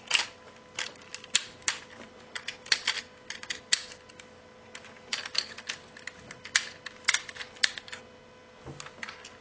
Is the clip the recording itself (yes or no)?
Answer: yes